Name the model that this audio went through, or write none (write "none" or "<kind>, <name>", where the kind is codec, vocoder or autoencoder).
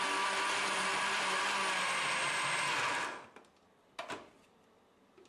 none